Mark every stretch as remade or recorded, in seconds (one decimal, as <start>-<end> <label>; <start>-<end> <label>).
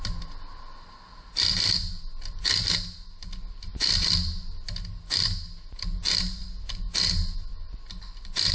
0.0-8.5 recorded